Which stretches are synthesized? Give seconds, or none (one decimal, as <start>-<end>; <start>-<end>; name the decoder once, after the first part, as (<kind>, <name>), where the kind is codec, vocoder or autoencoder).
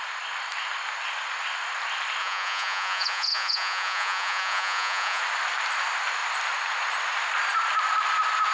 2.2-5.2 (vocoder, Vocos)